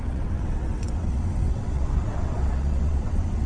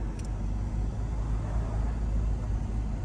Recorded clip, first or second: second